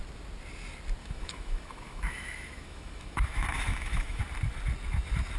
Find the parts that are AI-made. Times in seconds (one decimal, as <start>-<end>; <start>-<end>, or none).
1.0-4.2